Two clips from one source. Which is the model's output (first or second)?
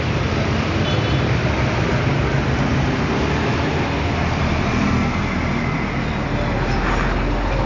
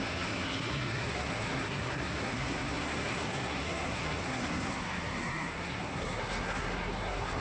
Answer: second